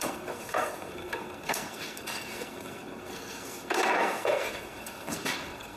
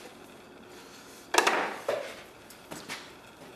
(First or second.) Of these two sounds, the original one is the second